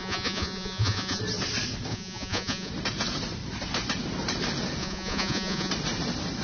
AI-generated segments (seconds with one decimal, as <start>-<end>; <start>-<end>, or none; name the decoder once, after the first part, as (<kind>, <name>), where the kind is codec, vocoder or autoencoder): 0.0-1.2 (vocoder, Vocos); 1.9-2.7; 4.8-5.7